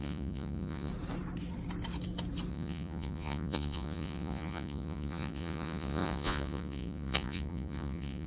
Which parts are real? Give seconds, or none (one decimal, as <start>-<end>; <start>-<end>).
0.9-2.5